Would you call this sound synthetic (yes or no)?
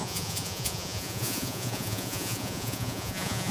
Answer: yes